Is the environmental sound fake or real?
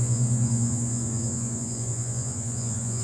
fake